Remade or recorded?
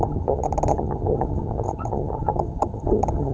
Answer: remade